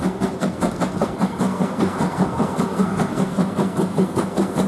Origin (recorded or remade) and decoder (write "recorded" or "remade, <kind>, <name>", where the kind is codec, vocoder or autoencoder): remade, codec, SNAC